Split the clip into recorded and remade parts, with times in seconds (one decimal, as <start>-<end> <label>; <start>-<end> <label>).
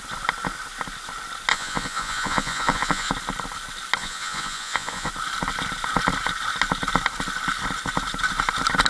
0.0-1.5 recorded; 1.5-3.1 remade; 3.1-4.0 recorded; 4.0-5.1 remade; 5.1-8.9 recorded